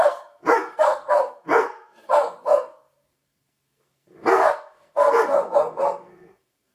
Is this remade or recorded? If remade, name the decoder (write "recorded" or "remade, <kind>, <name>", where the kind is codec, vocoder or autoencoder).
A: remade, codec, SNAC